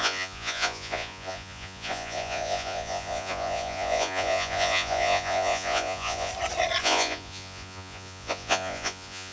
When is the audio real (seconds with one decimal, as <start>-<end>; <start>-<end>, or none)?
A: 6.3-6.8